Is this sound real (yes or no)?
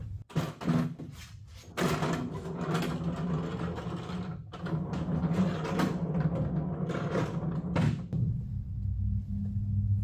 yes